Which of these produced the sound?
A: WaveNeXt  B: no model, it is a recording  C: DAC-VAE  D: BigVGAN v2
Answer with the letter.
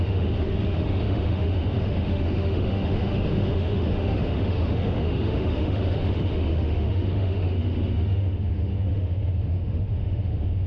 C